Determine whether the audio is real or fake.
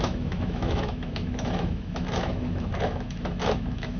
fake